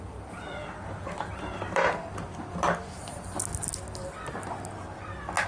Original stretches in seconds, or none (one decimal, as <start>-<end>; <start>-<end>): 0.0-1.3; 3.4-4.0; 4.5-5.5